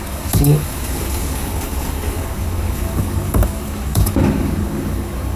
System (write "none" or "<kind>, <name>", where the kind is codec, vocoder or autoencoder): codec, DAC